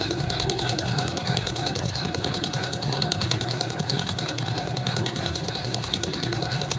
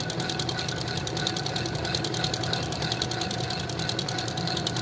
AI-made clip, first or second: first